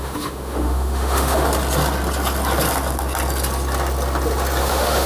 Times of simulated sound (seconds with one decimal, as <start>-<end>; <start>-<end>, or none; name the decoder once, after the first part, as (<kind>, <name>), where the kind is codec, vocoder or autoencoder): 0.0-1.5 (autoencoder, DAC-VAE); 4.6-5.1